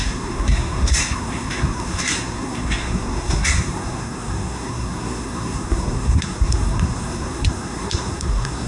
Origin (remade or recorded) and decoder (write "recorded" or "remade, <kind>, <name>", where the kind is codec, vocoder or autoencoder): remade, codec, SNAC